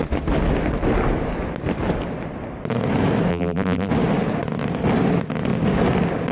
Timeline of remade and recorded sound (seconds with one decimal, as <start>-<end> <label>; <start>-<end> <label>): 0.0-3.3 recorded; 3.3-3.9 remade; 3.9-6.3 recorded

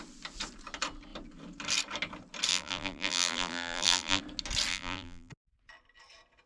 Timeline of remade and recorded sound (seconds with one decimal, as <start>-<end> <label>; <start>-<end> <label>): 0.0-2.5 recorded; 2.5-4.2 remade; 4.2-4.7 recorded; 4.7-5.3 remade; 5.3-6.5 recorded

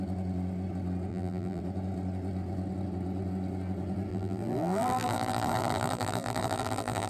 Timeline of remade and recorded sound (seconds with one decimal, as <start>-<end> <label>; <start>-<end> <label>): 0.0-1.1 recorded; 1.1-1.6 remade; 1.6-4.1 recorded; 4.1-7.1 remade

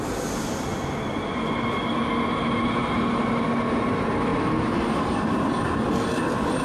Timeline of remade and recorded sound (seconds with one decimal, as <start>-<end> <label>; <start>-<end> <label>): 0.0-0.7 recorded; 0.7-1.7 remade; 1.7-2.8 recorded; 2.8-3.3 remade; 3.3-6.6 recorded

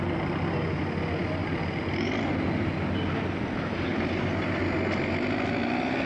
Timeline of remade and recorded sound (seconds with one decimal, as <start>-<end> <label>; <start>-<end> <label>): 0.0-1.4 recorded; 1.4-2.1 remade; 2.1-6.1 recorded

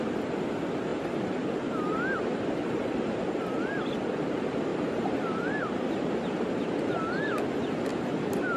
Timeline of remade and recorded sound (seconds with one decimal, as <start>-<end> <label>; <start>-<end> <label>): 0.0-0.9 recorded; 0.9-3.4 remade; 3.4-4.7 recorded; 4.7-6.0 remade; 6.0-7.9 recorded; 7.9-8.6 remade

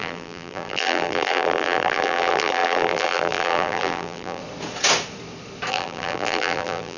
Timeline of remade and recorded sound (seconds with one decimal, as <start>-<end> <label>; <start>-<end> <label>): 0.0-4.4 remade; 4.4-5.7 recorded; 5.7-7.0 remade